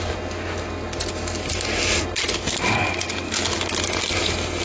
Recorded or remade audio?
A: recorded